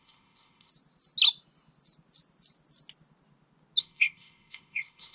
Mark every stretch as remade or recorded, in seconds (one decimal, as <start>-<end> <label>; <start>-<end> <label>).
0.0-0.7 remade; 0.7-3.8 recorded; 3.8-5.1 remade